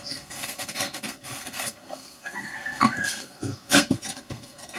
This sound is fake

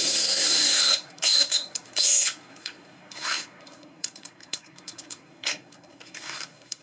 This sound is fake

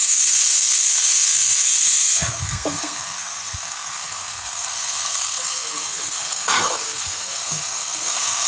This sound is fake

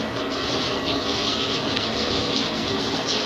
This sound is fake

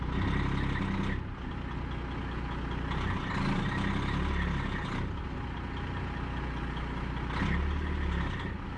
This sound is real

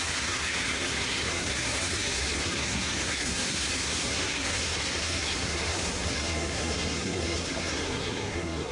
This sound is fake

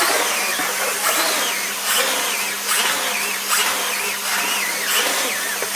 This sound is real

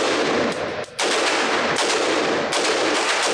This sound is real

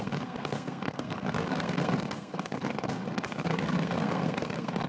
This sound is fake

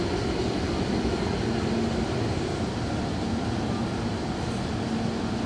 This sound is real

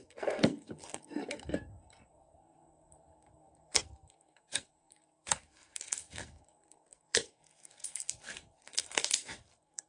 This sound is fake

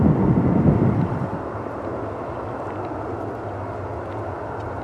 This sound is real